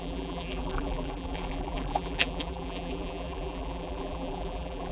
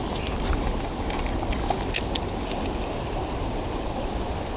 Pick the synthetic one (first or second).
first